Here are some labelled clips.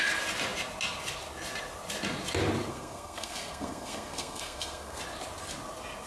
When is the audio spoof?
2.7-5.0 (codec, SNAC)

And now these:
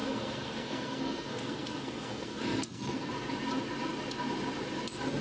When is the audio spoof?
0.0-3.1 (codec, SNAC)

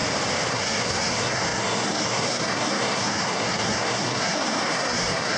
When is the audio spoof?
0.5-5.4 (codec, SNAC)

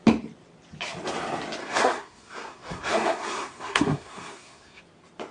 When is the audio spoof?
1.6-4.8 (codec, SNAC)